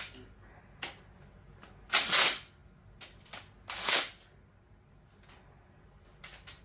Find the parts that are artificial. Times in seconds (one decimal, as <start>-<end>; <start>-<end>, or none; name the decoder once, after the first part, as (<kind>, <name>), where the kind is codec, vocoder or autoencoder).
none